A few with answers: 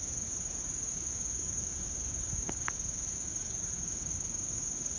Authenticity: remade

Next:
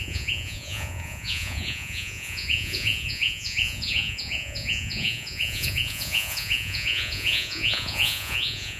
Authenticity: remade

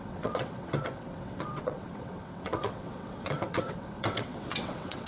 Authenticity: remade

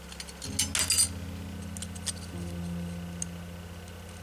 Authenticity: recorded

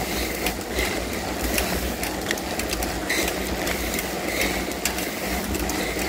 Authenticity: recorded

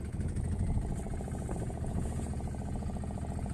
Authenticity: remade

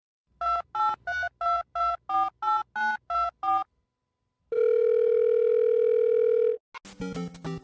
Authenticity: recorded